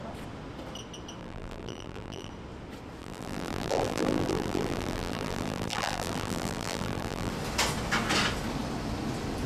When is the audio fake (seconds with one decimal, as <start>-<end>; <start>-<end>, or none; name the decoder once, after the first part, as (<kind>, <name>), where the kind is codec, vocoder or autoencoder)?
1.2-2.3 (vocoder, BigVGAN v2); 3.0-7.3